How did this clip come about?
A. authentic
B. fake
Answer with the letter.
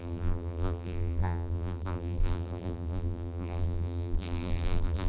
B